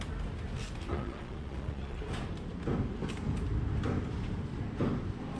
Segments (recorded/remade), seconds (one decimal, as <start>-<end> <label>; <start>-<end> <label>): 0.0-0.9 recorded; 0.9-2.0 remade; 2.0-5.4 recorded